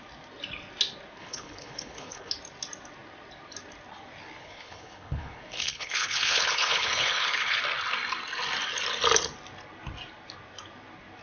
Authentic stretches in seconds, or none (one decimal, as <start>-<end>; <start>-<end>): 0.0-1.2; 2.3-4.4; 7.6-11.2

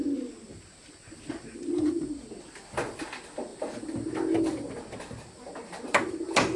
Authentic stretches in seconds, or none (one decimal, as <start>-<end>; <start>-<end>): 0.0-6.6

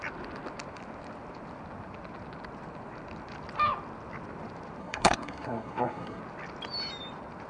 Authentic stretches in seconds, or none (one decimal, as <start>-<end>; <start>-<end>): 0.0-4.8; 6.2-7.5

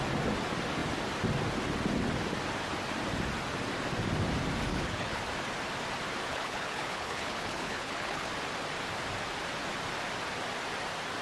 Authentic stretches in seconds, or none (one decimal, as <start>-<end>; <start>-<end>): 0.0-4.7; 5.2-6.3; 8.3-11.2

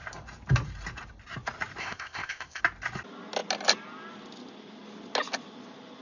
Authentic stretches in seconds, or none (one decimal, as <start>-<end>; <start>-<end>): 0.0-1.8; 2.6-6.0

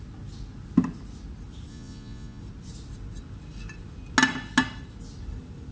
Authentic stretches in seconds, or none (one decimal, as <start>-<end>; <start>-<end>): 0.0-1.7; 2.4-5.7

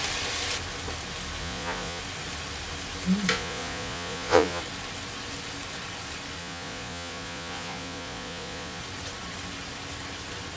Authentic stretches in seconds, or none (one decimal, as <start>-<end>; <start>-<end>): 0.0-1.4; 2.0-3.3; 4.6-6.4; 8.8-10.6